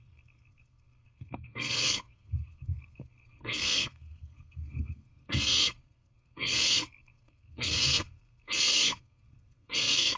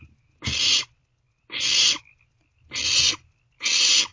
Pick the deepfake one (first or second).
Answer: first